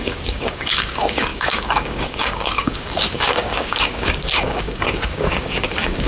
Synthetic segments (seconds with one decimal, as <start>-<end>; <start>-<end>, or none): 0.0-6.1